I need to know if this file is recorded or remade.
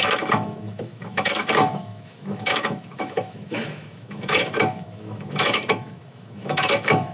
remade